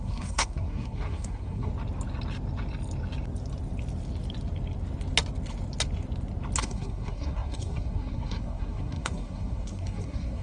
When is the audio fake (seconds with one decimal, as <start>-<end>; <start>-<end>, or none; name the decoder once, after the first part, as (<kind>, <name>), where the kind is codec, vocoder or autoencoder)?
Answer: 0.0-1.7 (codec, SNAC); 6.6-10.4